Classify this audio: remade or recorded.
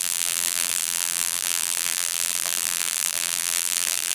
remade